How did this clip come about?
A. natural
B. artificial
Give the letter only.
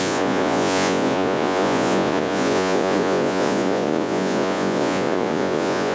B